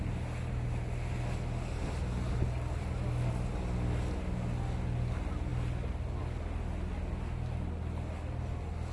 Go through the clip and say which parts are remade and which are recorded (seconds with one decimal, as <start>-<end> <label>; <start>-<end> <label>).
0.0-8.9 recorded